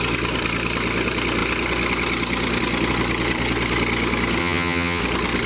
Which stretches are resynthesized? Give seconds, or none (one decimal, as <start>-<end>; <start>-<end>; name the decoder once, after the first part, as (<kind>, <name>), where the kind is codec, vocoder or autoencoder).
4.4-5.0 (vocoder, HiFi-GAN)